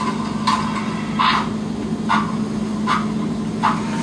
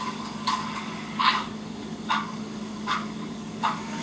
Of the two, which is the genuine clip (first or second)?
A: first